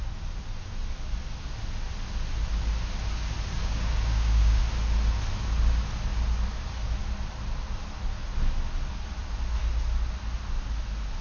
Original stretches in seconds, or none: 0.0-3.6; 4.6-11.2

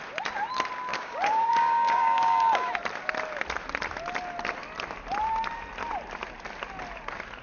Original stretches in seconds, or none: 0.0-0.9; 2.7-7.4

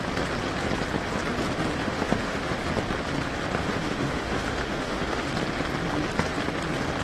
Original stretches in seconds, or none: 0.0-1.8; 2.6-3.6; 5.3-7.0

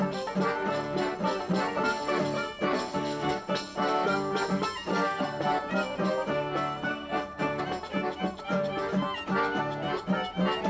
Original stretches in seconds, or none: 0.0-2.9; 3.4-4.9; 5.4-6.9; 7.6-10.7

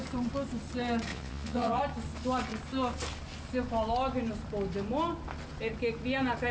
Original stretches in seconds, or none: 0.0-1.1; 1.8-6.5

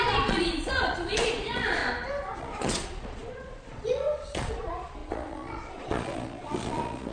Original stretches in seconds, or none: 1.8-2.4